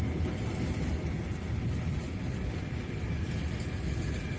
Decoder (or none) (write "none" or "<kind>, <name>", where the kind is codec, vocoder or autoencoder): none